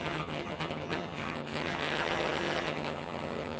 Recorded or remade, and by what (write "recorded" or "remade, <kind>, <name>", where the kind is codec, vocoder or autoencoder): remade, vocoder, HiFi-GAN